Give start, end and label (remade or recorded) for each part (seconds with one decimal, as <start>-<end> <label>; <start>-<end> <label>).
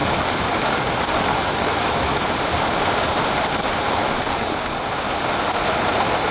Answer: 0.0-2.2 remade; 2.2-4.0 recorded; 4.0-4.8 remade; 4.8-6.3 recorded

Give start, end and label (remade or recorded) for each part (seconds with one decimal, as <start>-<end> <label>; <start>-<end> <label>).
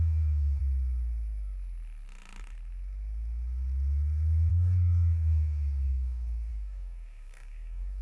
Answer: 0.0-0.6 remade; 0.6-4.5 recorded; 4.5-8.0 remade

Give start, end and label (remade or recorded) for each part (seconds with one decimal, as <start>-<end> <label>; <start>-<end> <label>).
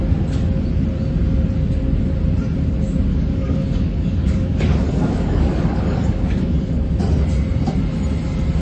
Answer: 0.0-3.1 recorded; 3.1-7.0 remade; 7.0-8.6 recorded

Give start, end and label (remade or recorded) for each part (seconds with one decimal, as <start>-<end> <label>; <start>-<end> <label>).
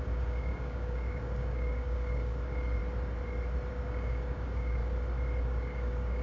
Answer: 0.0-2.8 remade; 2.8-3.7 recorded; 3.7-4.8 remade; 4.8-5.4 recorded; 5.4-6.2 remade